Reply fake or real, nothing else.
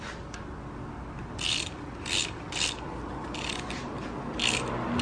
real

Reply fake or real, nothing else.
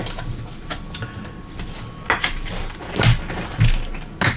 real